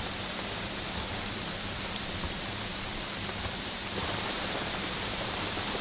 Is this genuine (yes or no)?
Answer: no